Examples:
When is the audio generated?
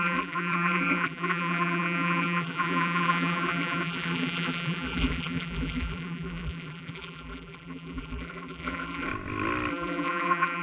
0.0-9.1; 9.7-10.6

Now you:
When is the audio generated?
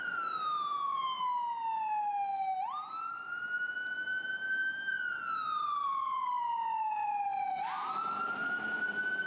4.4-6.4; 7.0-7.5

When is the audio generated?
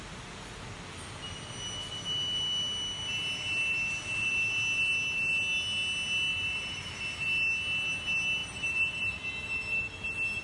6.3-7.0; 8.4-9.2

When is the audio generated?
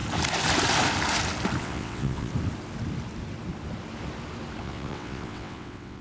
1.6-2.3; 4.6-6.0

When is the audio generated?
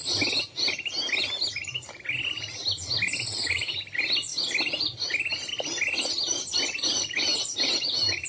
none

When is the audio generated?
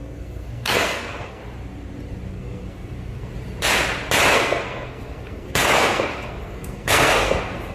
0.0-1.4; 2.3-3.3; 4.3-7.7